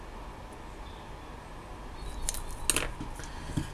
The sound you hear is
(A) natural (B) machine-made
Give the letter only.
A